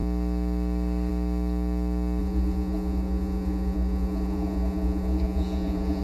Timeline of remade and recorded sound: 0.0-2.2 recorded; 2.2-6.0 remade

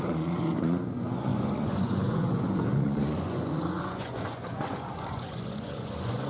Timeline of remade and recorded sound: 0.0-6.3 remade

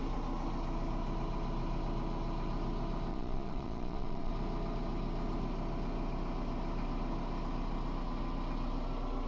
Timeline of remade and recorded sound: 0.0-3.1 recorded; 3.1-4.3 remade; 4.3-9.3 recorded

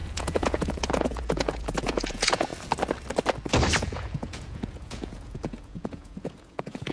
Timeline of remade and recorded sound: 0.0-2.5 remade; 2.5-3.7 recorded; 3.7-6.9 remade